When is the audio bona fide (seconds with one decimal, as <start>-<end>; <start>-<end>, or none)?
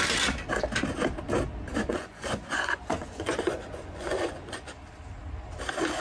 0.0-1.7; 4.7-6.0